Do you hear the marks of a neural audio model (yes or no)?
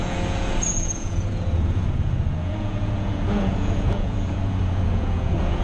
yes